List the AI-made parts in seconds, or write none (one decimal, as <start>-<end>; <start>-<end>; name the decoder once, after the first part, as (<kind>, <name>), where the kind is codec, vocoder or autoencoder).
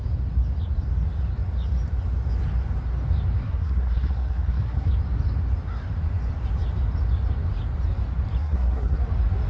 3.4-4.9 (codec, SNAC); 8.4-9.0